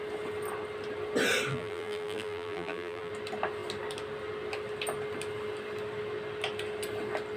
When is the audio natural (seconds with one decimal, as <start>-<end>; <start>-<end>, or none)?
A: 0.0-1.5; 3.1-7.4